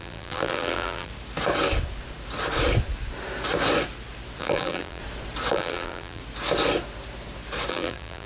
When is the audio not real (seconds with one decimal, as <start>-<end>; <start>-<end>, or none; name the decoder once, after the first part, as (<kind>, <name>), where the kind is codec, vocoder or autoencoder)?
0.0-1.1 (vocoder, BigVGAN v2); 4.4-5.0; 5.5-6.2; 7.7-8.3